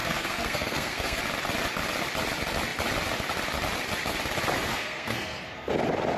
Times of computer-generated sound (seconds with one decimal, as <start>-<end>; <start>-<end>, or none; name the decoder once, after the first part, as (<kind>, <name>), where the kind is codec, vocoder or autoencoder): 0.0-1.2 (codec, SNAC); 4.7-5.7